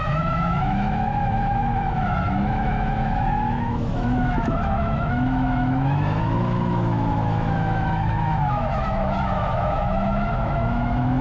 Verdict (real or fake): fake